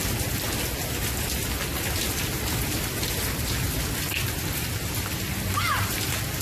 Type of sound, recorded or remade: recorded